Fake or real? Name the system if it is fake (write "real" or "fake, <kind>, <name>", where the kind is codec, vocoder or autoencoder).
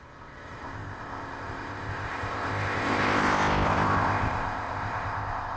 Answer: fake, codec, ZipCodec